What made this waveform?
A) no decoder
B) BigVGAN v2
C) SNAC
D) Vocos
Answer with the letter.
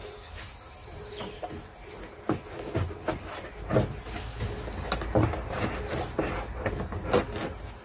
A